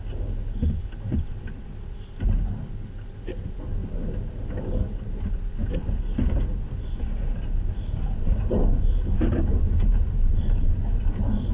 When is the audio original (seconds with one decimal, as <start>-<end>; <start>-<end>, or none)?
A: 0.0-11.5